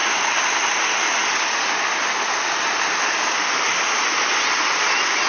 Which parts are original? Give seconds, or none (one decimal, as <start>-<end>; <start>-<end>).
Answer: 0.0-5.3